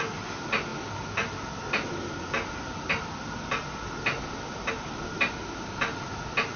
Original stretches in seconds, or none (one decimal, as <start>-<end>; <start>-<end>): 0.0-6.6